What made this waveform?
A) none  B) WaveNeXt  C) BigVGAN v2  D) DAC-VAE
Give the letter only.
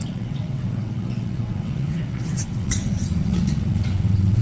B